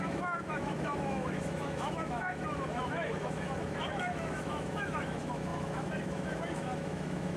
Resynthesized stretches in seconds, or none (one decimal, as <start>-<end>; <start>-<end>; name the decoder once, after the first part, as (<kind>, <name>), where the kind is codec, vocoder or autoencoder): 0.0-7.4 (autoencoder, DAC-VAE)